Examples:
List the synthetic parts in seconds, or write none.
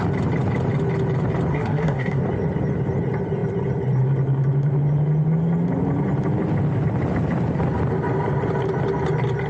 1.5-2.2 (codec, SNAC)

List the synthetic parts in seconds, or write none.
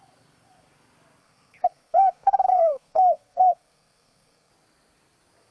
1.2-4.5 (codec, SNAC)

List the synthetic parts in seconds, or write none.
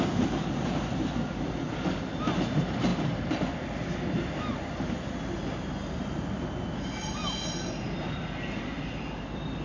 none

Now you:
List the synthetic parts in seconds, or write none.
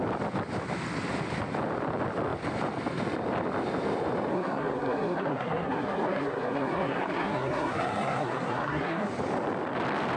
4.3-9.1 (codec, SNAC)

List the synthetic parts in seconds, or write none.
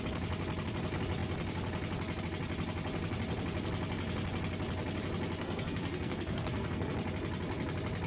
5.4-6.9 (codec, SNAC)